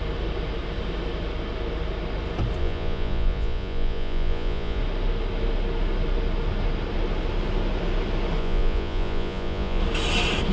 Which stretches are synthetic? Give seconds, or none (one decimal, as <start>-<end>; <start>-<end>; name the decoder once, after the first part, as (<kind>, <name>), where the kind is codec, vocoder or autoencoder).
2.6-4.8 (vocoder, Vocos); 8.4-9.8